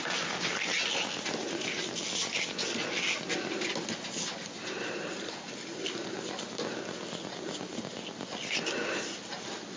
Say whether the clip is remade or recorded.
recorded